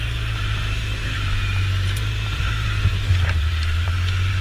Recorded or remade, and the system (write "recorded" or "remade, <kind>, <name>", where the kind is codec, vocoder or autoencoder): remade, vocoder, BigVGAN v2